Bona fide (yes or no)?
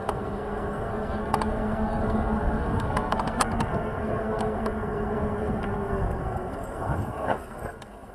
no